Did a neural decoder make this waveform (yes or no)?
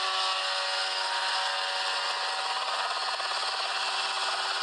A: no